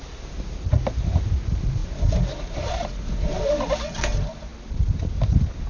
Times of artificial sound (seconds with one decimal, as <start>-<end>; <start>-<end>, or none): none